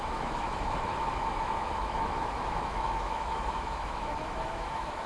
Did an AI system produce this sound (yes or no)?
yes